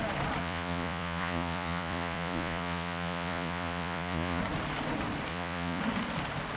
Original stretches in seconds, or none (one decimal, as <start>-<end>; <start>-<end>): 0.0-0.4; 4.4-5.3; 5.8-6.6